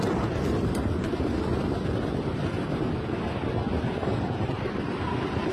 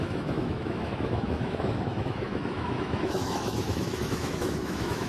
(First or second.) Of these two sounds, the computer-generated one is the second